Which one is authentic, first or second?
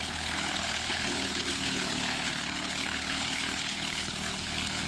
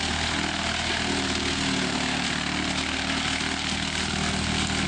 second